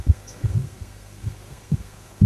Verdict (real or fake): fake